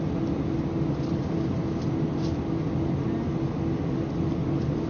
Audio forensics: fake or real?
real